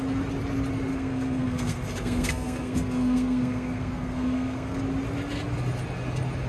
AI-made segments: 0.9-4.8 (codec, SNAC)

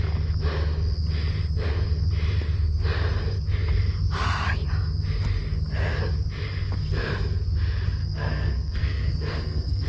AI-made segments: 8.0-9.9 (codec, SNAC)

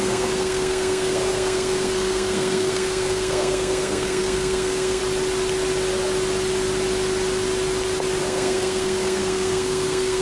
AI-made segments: 0.0-5.0 (codec, SNAC); 8.2-10.2

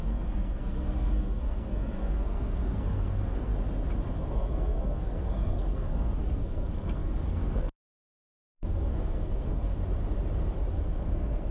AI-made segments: 0.0-3.5 (codec, SNAC); 4.3-9.7; 10.7-11.5

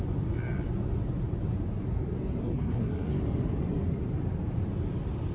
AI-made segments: 2.4-3.2 (codec, SNAC)